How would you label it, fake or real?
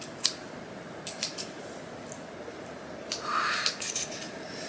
real